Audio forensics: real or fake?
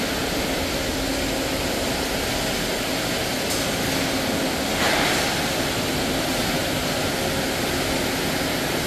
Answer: real